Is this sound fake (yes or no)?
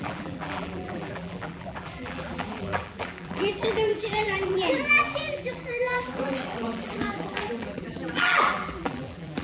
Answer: yes